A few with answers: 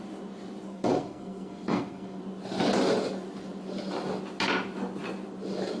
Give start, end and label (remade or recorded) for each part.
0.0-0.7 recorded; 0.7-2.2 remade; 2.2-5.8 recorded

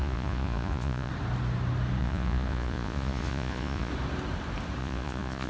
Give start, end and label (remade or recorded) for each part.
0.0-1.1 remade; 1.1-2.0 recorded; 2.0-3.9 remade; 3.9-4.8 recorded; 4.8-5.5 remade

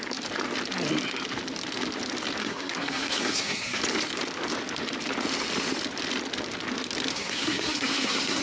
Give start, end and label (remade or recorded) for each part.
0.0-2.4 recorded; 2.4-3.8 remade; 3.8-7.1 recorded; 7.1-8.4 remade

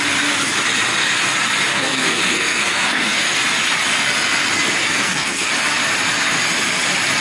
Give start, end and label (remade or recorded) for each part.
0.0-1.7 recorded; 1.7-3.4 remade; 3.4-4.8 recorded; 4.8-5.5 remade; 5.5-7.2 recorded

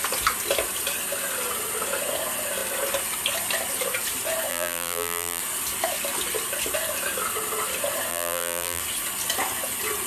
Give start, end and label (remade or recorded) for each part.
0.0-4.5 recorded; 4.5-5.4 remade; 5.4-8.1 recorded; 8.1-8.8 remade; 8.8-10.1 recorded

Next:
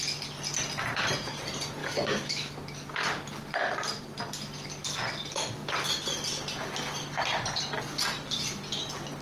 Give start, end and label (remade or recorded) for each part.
0.0-1.8 recorded; 1.8-2.5 remade; 2.5-9.2 recorded

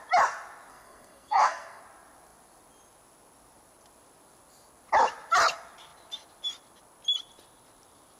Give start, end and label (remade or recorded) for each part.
0.0-0.7 recorded; 0.7-1.8 remade; 1.8-8.2 recorded